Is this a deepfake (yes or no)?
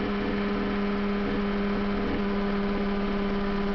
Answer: no